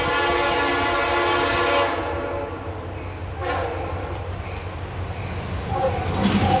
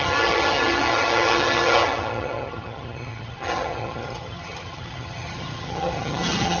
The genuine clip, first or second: first